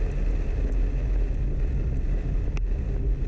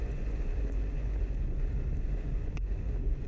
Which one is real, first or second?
first